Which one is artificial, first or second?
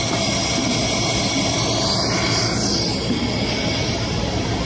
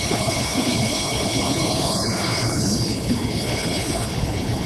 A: second